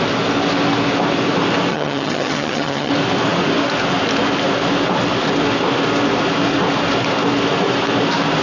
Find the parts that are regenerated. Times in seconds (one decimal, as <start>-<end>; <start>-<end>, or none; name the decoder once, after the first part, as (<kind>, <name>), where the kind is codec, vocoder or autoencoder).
1.7-2.9 (vocoder, HiFi-GAN)